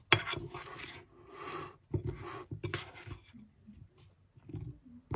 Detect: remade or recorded recorded